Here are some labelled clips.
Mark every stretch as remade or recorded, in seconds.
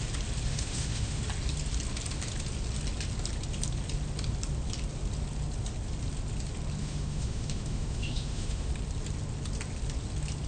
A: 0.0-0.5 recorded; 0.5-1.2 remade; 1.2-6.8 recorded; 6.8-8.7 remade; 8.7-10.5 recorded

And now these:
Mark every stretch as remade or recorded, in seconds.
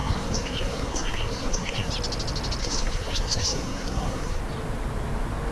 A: 0.0-1.9 remade; 1.9-2.6 recorded; 2.6-4.4 remade; 4.4-5.5 recorded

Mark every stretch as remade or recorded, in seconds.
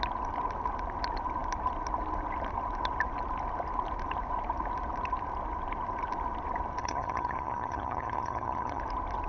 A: 0.0-6.8 recorded; 6.8-8.8 remade; 8.8-9.3 recorded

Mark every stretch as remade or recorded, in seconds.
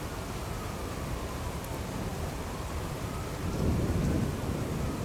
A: 0.0-2.1 recorded; 2.1-3.7 remade; 3.7-5.0 recorded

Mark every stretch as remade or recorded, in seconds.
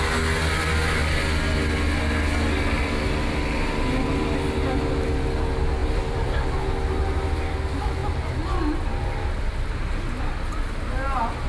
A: 0.0-5.8 recorded; 5.8-6.6 remade; 6.6-11.5 recorded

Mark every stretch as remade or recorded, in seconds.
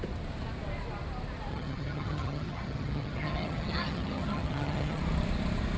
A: 0.0-1.5 recorded; 1.5-5.0 remade; 5.0-5.8 recorded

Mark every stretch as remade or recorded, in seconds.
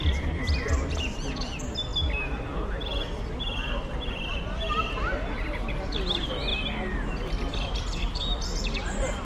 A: 0.0-9.2 recorded